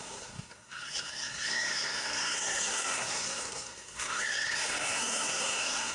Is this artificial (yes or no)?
yes